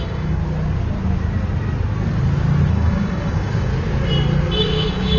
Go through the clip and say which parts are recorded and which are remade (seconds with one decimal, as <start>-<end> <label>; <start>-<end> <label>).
0.0-0.4 remade; 0.4-2.7 recorded; 2.7-3.7 remade; 3.7-4.6 recorded; 4.6-5.2 remade